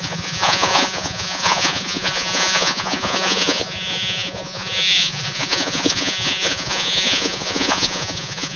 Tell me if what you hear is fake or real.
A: fake